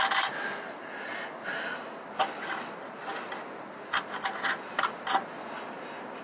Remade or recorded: recorded